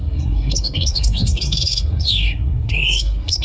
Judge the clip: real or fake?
fake